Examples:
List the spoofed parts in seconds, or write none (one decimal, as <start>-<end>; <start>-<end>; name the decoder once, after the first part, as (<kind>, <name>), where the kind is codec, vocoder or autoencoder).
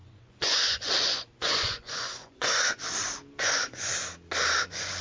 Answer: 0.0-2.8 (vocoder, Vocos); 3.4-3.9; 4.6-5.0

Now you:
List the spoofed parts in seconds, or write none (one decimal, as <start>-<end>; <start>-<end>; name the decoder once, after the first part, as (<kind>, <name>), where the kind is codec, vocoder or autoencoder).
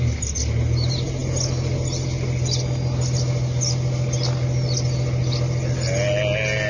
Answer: none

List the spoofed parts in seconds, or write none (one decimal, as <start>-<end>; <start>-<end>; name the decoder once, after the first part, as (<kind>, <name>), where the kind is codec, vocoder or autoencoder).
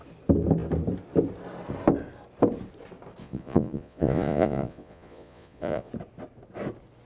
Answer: 3.2-5.9 (vocoder, Vocos)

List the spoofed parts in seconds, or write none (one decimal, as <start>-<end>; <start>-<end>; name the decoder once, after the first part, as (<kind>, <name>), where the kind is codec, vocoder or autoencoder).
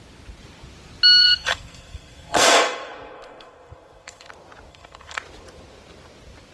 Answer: 1.2-4.3 (codec, SNAC); 4.7-5.2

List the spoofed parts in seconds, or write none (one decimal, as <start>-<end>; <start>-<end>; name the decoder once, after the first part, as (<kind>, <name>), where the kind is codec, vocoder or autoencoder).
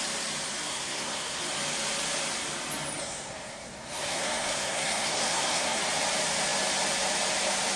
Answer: 0.7-1.4 (codec, SNAC); 3.0-5.8